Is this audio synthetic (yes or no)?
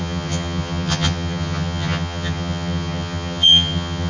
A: yes